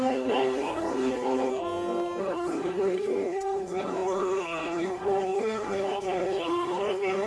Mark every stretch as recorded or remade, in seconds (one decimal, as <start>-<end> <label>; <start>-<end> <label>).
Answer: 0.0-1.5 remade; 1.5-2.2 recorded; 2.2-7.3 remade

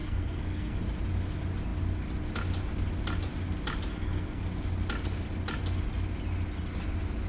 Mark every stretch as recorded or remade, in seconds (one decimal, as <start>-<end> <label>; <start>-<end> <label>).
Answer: 0.0-0.8 remade; 0.8-3.9 recorded; 3.9-4.4 remade; 4.4-7.3 recorded

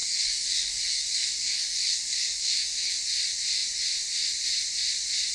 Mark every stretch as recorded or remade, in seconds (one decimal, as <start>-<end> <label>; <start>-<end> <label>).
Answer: 0.0-2.9 remade; 2.9-5.3 recorded

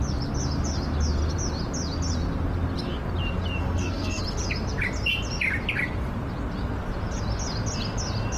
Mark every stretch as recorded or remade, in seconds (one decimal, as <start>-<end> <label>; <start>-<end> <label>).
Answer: 0.0-3.6 recorded; 3.6-4.2 remade; 4.2-8.4 recorded

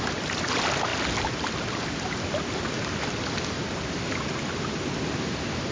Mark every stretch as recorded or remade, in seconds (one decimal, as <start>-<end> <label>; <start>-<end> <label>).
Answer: 0.0-5.7 recorded